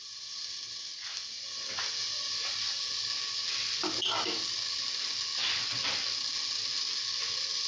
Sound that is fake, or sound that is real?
real